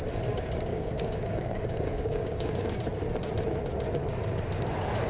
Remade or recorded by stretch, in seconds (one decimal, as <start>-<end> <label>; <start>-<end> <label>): 0.0-0.7 recorded; 0.7-2.8 remade; 2.8-5.1 recorded